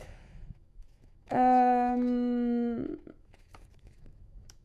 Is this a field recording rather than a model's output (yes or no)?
no